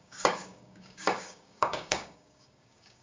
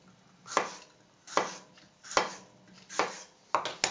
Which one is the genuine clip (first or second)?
second